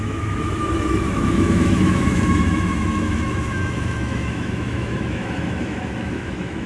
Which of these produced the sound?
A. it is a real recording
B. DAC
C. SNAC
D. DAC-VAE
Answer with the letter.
D